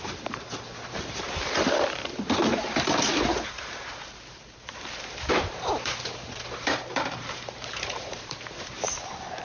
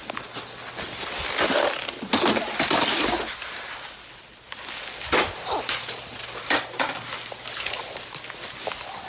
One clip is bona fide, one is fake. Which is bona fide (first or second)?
second